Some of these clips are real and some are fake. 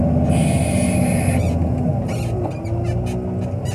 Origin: real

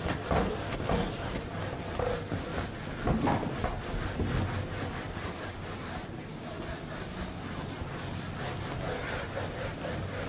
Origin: real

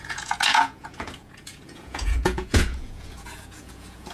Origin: fake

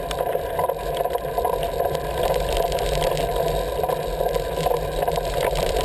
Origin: fake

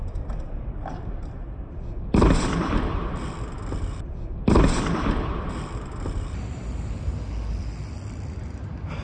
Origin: fake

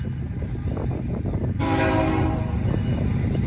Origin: real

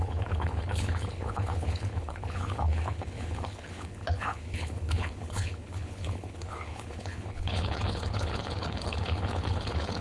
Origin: fake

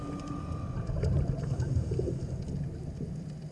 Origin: real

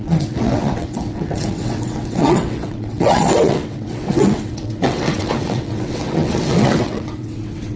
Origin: fake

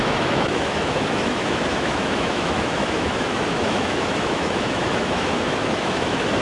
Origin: fake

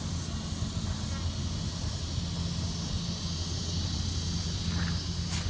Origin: real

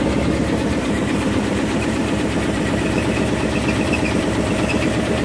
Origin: fake